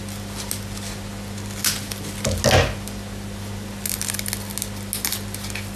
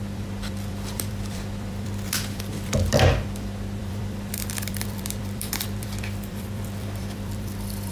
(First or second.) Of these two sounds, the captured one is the first